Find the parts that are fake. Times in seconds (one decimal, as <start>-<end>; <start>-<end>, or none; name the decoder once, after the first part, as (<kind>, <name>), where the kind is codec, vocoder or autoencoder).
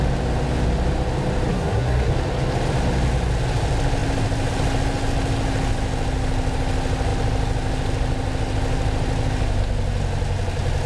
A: 1.5-2.1 (codec, SNAC)